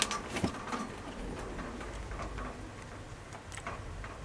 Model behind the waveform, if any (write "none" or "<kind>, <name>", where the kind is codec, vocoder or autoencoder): none